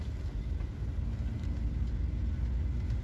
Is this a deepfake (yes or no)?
no